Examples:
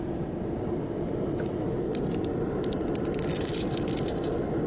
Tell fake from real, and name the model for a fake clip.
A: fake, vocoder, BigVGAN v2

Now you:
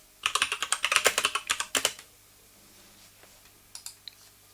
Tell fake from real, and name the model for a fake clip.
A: real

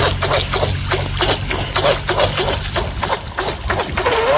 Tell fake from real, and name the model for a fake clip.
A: real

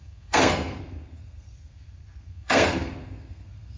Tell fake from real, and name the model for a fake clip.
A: fake, codec, SNAC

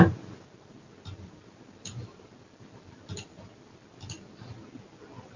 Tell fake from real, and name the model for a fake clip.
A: real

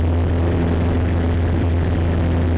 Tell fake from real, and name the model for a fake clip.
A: real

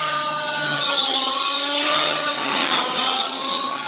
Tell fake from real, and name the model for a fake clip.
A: fake, vocoder, HiFi-GAN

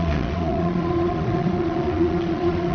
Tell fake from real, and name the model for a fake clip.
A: fake, vocoder, Vocos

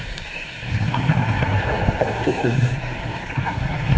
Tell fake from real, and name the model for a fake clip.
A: fake, codec, SNAC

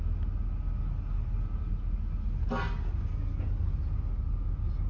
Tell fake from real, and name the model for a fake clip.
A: real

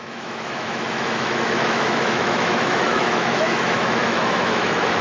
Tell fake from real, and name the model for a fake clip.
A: fake, autoencoder, DAC-VAE